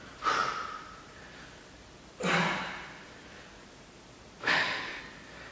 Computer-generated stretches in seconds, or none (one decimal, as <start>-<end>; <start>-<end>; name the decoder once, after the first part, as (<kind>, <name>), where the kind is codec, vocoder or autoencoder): 4.4-5.0 (autoencoder, DAC-VAE)